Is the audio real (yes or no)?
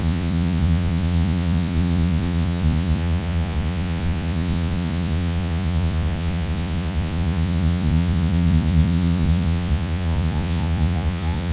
no